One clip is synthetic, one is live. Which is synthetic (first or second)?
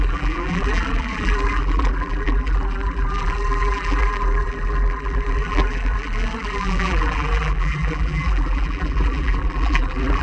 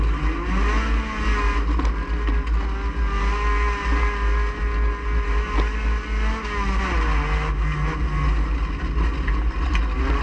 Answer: first